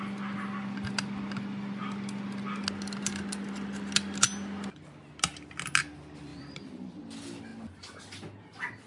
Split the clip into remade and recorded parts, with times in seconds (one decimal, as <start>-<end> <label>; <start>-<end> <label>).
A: 0.0-6.3 recorded; 6.3-7.0 remade; 7.0-8.9 recorded